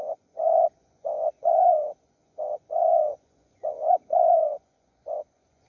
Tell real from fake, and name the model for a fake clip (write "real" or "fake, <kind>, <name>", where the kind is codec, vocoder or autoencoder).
fake, vocoder, Vocos